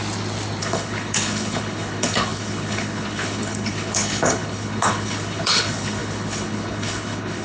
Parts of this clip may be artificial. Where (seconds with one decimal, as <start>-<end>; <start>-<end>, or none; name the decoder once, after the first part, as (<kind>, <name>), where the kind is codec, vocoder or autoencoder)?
0.6-7.4 (codec, HILCodec)